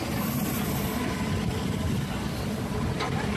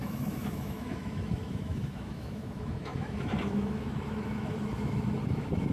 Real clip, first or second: first